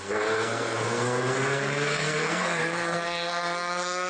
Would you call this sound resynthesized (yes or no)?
yes